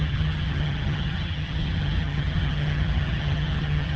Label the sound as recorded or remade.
remade